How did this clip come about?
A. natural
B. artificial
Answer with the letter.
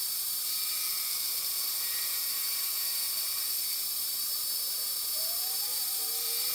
B